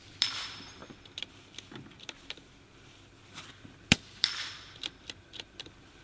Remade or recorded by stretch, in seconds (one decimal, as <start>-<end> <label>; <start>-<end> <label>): 0.0-6.0 remade

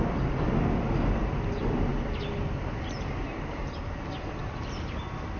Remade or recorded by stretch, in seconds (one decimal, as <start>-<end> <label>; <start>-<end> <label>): 0.0-5.4 recorded

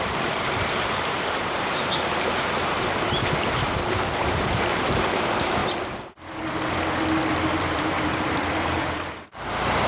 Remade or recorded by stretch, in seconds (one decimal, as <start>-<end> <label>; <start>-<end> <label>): 0.0-5.6 remade; 5.6-7.6 recorded; 7.6-9.9 remade

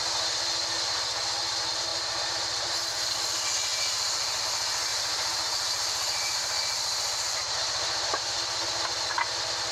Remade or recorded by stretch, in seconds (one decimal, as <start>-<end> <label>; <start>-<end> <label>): 0.0-1.9 recorded; 1.9-2.7 remade; 2.7-3.7 recorded; 3.7-4.4 remade; 4.4-4.9 recorded; 4.9-8.2 remade; 8.2-9.7 recorded